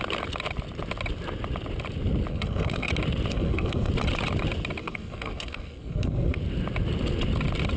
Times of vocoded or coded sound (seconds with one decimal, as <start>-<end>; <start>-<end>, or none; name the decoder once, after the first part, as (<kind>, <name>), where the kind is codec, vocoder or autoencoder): 2.3-2.9 (codec, SNAC); 3.3-3.9; 4.8-6.4